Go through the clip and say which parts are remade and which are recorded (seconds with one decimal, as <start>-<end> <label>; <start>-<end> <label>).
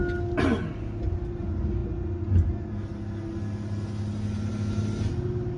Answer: 0.0-5.6 recorded